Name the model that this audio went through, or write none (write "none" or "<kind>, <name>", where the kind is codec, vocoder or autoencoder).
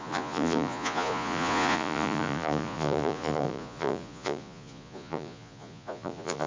vocoder, Vocos